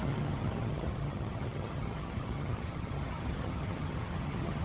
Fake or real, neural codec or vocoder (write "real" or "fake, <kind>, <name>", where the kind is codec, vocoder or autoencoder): fake, vocoder, HiFi-GAN